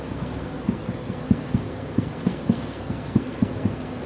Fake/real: fake